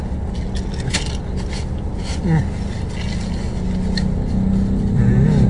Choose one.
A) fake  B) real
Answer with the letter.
B